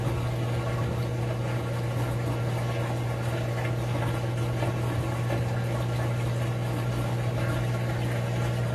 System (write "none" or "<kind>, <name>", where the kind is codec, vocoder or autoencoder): none